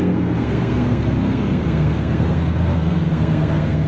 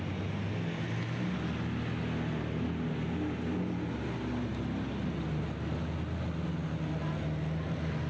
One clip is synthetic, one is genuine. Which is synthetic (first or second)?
first